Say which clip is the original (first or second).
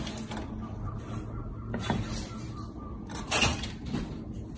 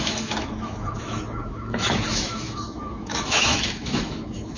first